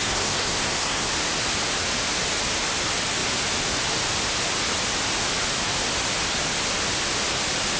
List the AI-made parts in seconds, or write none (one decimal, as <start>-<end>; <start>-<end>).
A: 0.0-1.1